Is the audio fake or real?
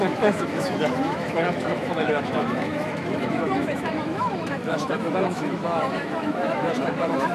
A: fake